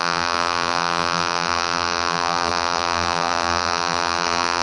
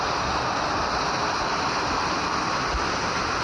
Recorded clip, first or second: second